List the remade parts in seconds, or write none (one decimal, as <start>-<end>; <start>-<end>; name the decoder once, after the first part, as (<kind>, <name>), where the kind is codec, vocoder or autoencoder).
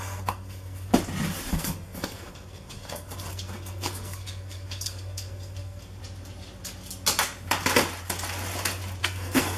0.0-0.9 (codec, SNAC); 1.5-6.0; 9.0-9.6